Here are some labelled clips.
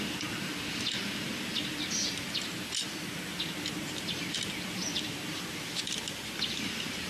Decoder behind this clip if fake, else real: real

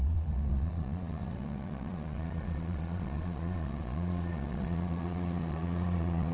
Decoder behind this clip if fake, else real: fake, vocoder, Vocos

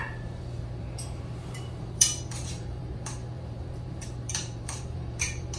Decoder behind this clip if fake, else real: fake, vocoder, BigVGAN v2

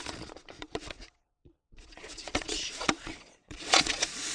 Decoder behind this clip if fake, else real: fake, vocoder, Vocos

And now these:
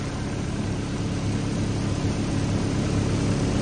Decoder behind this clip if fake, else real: real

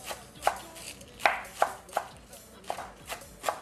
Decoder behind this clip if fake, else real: real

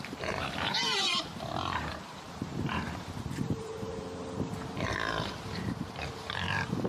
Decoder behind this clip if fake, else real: fake, vocoder, BigVGAN v2